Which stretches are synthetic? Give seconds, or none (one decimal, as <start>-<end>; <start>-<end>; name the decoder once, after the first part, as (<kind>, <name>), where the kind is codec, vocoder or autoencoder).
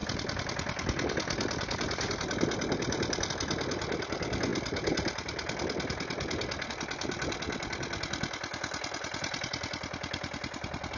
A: 0.0-3.3 (vocoder, BigVGAN v2)